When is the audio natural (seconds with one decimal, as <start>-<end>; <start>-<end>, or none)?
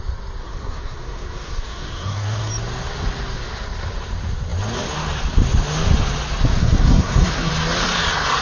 0.0-0.4; 2.5-6.6; 7.5-8.4